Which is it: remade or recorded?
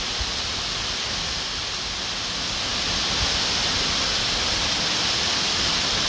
recorded